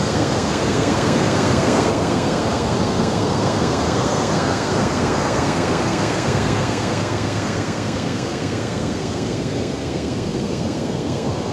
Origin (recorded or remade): remade